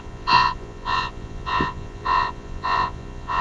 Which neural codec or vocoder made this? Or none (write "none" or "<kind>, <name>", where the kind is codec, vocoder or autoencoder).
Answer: vocoder, Vocos